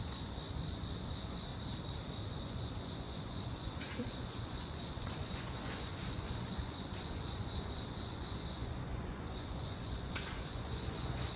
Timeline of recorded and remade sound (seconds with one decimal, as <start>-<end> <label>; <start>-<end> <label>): 0.0-1.5 remade; 1.5-2.3 recorded; 2.3-11.4 remade